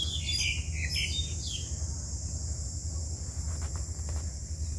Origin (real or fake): real